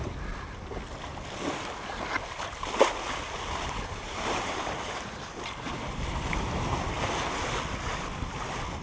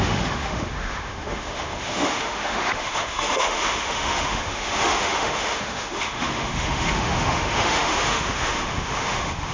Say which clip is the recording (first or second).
first